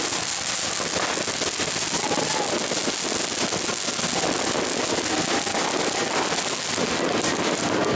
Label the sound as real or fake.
real